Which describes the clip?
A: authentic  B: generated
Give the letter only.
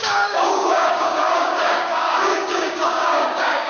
B